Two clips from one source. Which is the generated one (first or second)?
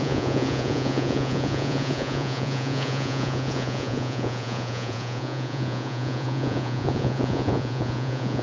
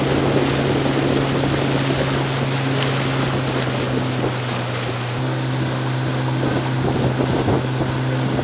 first